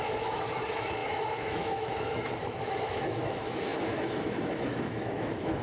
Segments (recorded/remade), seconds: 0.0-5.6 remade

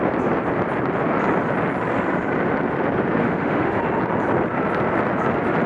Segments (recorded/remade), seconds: 0.0-3.2 recorded; 3.2-3.8 remade; 3.8-5.7 recorded

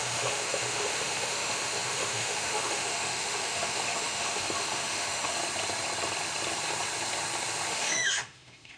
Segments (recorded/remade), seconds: 0.0-5.4 remade; 5.4-7.7 recorded; 7.7-8.8 remade

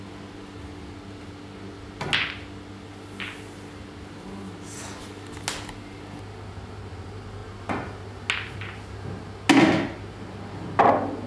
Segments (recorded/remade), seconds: 0.0-11.3 recorded

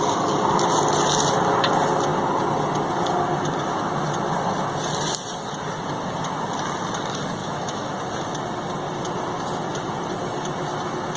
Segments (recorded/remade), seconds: 0.0-7.4 recorded; 7.4-7.9 remade; 7.9-11.2 recorded

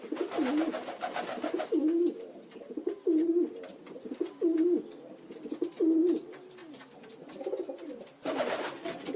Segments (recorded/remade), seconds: 0.0-9.2 recorded

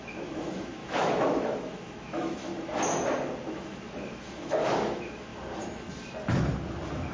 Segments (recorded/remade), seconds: 0.0-2.5 remade; 2.5-3.5 recorded; 3.5-5.3 remade; 5.3-7.1 recorded

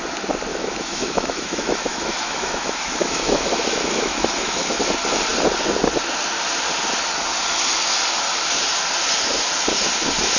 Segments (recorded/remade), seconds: 0.0-0.5 recorded; 0.5-4.8 remade; 4.8-10.4 recorded